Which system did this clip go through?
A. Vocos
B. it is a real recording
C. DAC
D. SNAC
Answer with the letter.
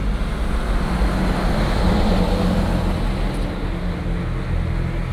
B